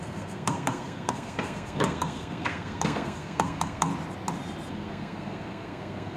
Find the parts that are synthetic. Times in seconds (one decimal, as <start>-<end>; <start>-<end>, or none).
0.0-3.9; 4.7-6.2